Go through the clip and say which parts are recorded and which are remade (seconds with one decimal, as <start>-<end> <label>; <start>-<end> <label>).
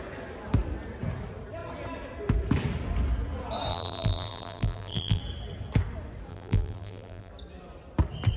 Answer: 0.0-3.7 recorded; 3.7-5.2 remade; 5.2-6.3 recorded; 6.3-7.3 remade; 7.3-8.4 recorded